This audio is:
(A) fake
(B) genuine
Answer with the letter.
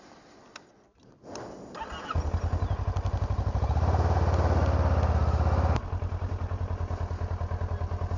B